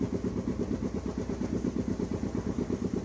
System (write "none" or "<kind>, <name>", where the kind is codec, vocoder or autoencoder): none